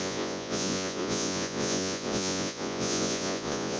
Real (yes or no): no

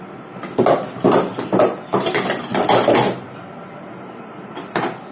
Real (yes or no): yes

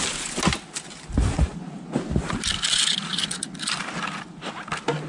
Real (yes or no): yes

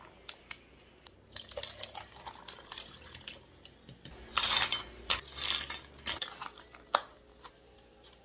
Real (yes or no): yes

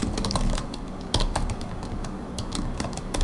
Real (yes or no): no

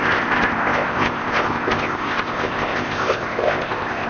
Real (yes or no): no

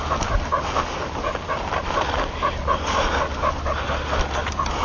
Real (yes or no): yes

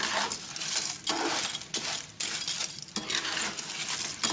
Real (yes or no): yes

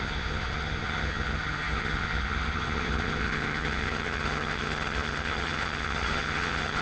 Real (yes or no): no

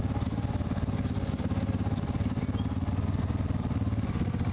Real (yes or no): yes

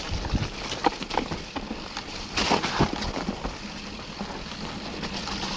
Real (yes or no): yes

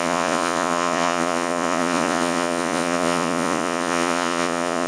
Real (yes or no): no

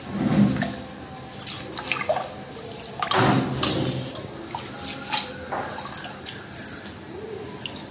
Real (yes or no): yes